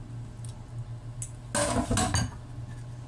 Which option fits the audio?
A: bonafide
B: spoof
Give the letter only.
A